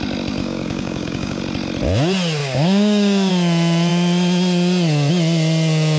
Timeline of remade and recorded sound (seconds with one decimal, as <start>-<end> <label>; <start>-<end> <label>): 0.0-0.4 recorded; 0.4-1.4 remade; 1.4-2.4 recorded; 2.4-3.3 remade; 3.3-6.0 recorded

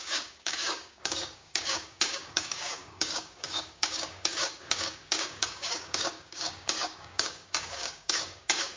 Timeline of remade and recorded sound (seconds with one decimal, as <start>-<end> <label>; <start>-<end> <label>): 0.0-8.8 remade

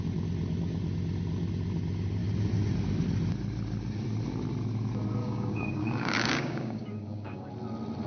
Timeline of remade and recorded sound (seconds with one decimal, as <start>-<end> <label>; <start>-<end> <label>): 0.0-5.2 recorded; 5.2-7.5 remade; 7.5-8.1 recorded

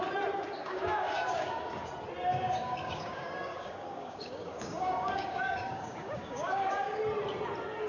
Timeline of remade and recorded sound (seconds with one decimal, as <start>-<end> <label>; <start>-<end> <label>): 0.0-0.6 recorded; 0.6-1.9 remade; 1.9-2.3 recorded; 2.3-7.0 remade; 7.0-7.9 recorded

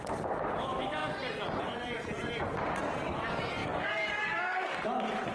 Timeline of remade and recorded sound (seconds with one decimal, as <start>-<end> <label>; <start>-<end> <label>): 0.0-3.6 recorded; 3.6-4.8 remade; 4.8-5.3 recorded